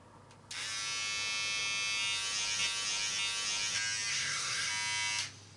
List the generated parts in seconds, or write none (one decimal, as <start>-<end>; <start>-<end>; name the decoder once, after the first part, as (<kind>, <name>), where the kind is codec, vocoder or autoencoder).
4.1-4.7 (codec, SNAC)